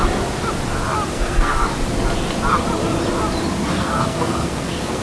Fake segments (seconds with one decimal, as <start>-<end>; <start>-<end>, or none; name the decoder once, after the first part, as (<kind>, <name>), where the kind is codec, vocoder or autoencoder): 1.1-1.7 (codec, SNAC); 3.7-5.0